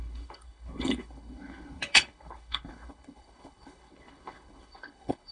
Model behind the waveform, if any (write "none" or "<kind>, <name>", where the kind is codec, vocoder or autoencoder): codec, HILCodec